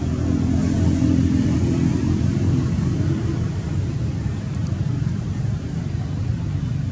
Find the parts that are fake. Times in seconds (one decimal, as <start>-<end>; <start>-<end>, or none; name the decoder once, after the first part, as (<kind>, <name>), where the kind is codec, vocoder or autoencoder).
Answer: 1.9-6.0 (vocoder, BigVGAN v2)